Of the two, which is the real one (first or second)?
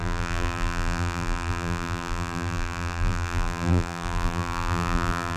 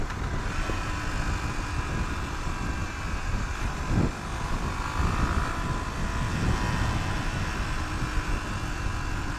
second